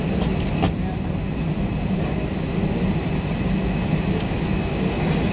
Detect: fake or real real